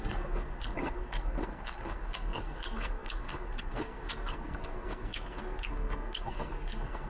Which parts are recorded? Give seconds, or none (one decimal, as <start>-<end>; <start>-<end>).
none